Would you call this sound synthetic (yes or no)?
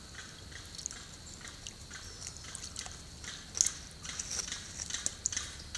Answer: no